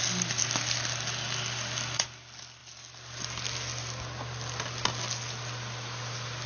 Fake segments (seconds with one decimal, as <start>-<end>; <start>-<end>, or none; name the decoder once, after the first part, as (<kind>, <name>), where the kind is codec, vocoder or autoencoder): none